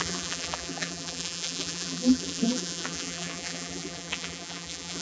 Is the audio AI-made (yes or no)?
yes